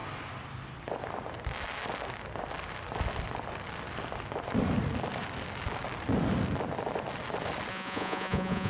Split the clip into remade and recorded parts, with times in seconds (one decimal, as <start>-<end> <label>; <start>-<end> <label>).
0.0-7.7 recorded; 7.7-8.7 remade

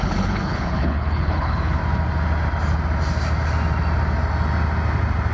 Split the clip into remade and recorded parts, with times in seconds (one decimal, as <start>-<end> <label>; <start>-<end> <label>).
0.0-1.8 remade; 1.8-5.3 recorded

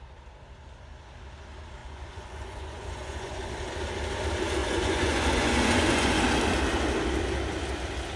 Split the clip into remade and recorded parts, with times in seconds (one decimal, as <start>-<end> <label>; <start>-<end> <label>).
0.0-1.8 recorded; 1.8-3.5 remade; 3.5-4.6 recorded; 4.6-6.2 remade; 6.2-8.2 recorded

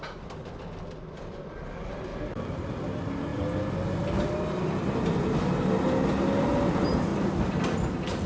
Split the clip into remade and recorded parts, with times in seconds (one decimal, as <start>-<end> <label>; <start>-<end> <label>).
0.0-2.1 recorded; 2.1-2.7 remade; 2.7-8.3 recorded

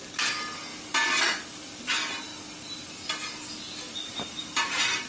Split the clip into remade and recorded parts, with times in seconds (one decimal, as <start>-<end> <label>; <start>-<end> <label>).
0.0-4.0 recorded; 4.0-5.1 remade

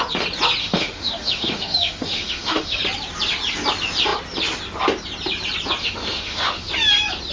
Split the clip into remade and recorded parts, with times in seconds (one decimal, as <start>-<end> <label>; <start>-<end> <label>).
0.0-0.6 recorded; 0.6-2.8 remade; 2.8-5.8 recorded; 5.8-6.7 remade; 6.7-7.3 recorded

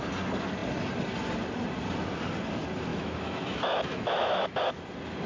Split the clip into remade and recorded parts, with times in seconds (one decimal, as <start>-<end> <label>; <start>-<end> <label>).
0.0-2.9 recorded; 2.9-4.7 remade; 4.7-5.3 recorded

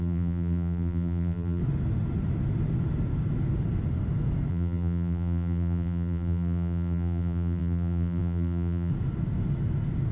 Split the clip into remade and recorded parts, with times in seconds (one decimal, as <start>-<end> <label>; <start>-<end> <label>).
0.0-1.6 remade; 1.6-4.5 recorded; 4.5-8.9 remade; 8.9-10.1 recorded